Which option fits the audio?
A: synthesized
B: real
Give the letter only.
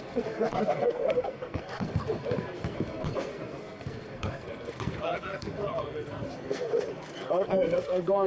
A